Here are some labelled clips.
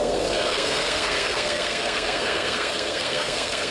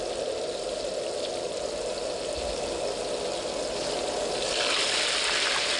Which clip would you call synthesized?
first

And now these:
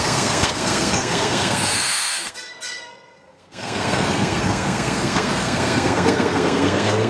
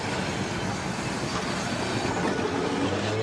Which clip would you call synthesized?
first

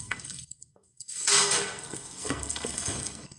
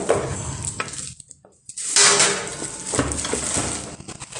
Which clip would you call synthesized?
first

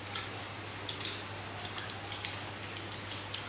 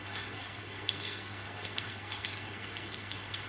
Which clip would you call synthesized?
second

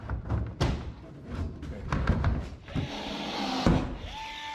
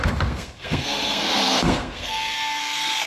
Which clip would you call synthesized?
second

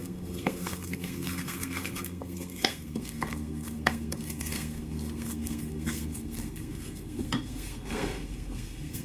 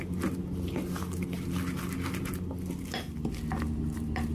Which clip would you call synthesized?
first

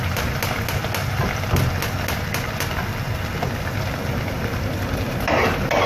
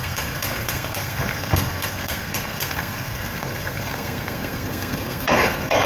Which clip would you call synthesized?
second